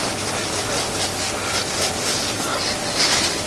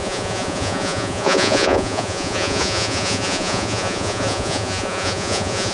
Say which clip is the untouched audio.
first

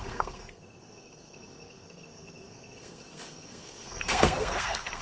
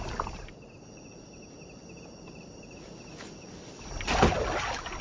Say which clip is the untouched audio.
second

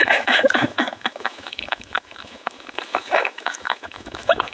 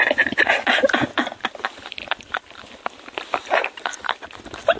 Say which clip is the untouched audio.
second